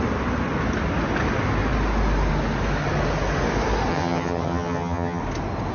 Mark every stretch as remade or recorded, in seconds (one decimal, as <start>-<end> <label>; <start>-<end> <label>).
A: 0.0-3.9 recorded; 3.9-5.2 remade; 5.2-5.7 recorded